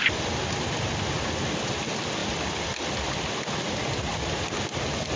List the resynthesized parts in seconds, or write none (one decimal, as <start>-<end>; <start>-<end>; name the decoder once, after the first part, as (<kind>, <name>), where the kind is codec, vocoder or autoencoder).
none